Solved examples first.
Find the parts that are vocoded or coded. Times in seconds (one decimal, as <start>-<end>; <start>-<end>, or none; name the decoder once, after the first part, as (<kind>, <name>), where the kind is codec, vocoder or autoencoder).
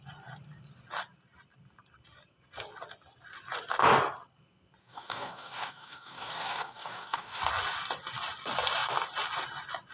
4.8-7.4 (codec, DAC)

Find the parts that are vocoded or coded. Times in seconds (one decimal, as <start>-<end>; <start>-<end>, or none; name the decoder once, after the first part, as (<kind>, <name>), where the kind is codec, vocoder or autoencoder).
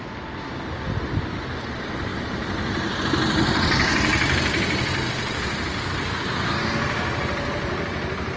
none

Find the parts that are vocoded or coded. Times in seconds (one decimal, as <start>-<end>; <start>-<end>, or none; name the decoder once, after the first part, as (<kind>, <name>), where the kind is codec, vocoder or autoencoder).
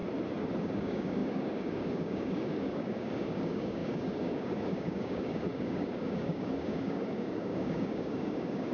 0.6-8.7 (codec, DAC)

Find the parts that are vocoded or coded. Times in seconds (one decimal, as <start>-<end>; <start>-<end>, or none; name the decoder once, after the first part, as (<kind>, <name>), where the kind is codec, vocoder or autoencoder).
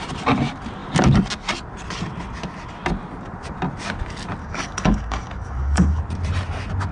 4.4-6.0 (codec, DAC)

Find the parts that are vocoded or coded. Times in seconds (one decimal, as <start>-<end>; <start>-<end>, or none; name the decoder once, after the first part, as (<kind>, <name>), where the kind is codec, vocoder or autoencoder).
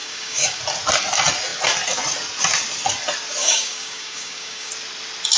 0.0-0.6 (codec, DAC); 3.4-4.7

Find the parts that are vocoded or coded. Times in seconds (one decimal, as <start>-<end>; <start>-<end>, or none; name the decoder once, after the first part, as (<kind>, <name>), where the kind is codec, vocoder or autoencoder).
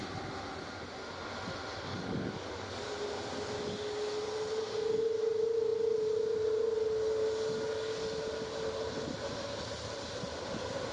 1.9-2.8 (codec, DAC)